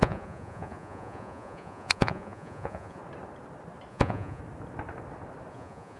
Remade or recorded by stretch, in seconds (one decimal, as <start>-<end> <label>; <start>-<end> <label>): 0.0-3.0 remade; 3.0-3.9 recorded; 3.9-4.4 remade; 4.4-5.5 recorded; 5.5-6.0 remade